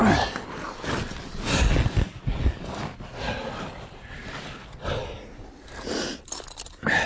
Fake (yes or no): no